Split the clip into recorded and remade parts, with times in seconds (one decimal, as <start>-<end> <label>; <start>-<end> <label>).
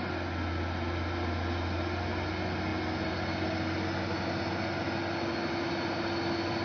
0.0-6.6 recorded